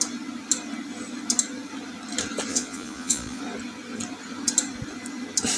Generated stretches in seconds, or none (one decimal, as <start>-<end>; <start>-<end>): 2.5-3.4

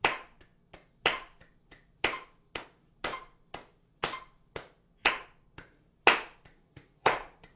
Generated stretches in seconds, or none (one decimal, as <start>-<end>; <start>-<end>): 6.5-7.6

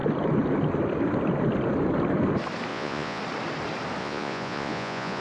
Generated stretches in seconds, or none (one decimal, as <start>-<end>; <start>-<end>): 2.7-3.2; 4.0-5.2

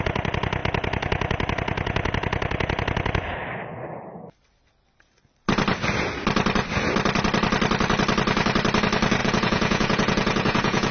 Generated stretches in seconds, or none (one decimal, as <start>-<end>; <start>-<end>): 9.2-10.9

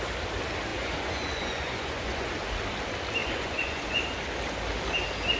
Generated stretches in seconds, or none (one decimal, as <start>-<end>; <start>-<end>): 0.7-2.3; 3.2-4.0

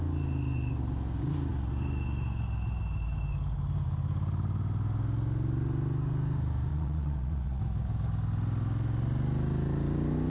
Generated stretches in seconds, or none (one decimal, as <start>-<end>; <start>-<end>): 6.7-7.6

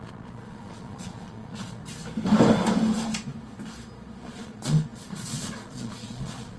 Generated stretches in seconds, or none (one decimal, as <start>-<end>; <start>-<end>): 0.0-1.8; 4.2-6.6

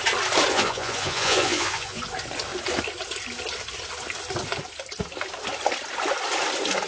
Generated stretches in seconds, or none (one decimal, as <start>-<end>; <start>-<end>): 0.5-2.0